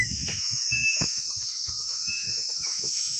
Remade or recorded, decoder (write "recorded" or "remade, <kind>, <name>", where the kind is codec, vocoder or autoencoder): remade, autoencoder, DAC-VAE